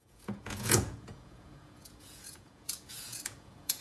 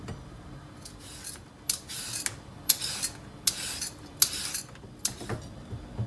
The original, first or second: second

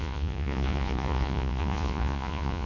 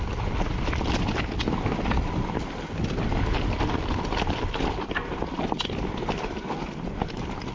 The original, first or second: second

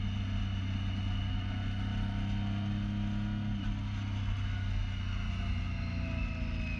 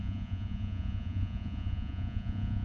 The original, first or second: first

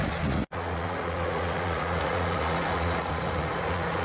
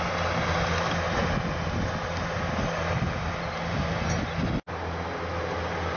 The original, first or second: second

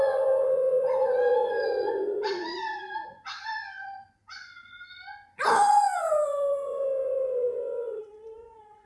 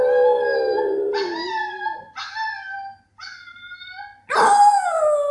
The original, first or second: second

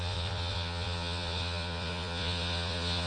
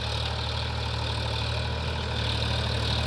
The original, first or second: second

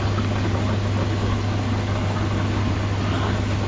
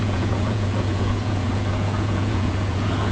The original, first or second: first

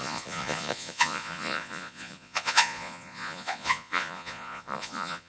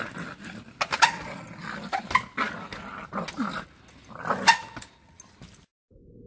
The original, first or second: second